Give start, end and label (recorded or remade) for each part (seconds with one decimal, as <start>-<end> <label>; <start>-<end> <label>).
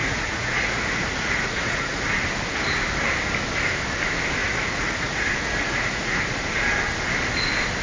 0.0-2.0 remade; 2.0-4.4 recorded; 4.4-6.2 remade; 6.2-7.8 recorded